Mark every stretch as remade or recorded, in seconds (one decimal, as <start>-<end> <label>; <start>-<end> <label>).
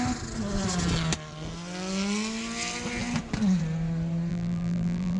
0.0-4.3 recorded; 4.3-5.2 remade